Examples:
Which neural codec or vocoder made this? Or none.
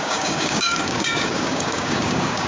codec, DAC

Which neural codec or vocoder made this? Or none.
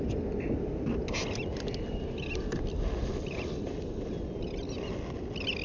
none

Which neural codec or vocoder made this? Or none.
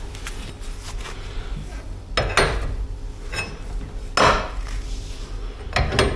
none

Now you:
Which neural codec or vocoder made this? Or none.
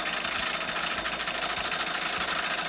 none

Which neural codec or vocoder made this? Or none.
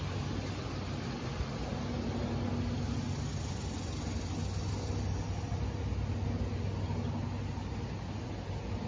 none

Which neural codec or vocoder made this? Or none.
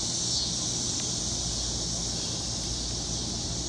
none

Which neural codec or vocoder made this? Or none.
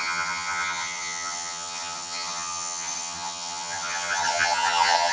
vocoder, HiFi-GAN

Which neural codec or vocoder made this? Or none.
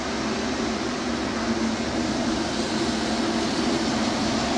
none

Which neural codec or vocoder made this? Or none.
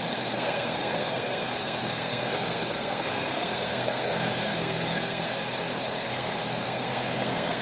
codec, SNAC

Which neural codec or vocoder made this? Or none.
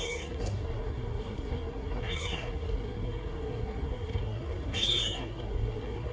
codec, SNAC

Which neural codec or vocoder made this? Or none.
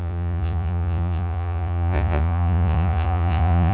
vocoder, Vocos